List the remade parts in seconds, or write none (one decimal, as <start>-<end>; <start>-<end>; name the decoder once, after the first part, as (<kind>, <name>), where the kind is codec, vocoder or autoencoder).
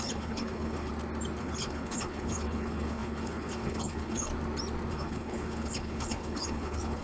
0.0-0.9 (codec, HILCodec); 1.4-4.3; 4.9-7.0